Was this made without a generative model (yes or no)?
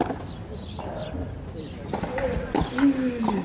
yes